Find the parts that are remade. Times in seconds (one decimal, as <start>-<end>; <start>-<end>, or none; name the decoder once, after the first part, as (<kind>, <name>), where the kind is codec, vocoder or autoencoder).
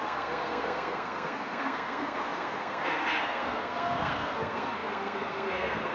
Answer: 0.0-5.9 (codec, SNAC)